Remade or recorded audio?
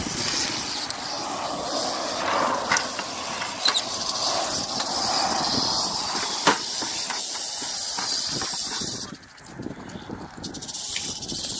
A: recorded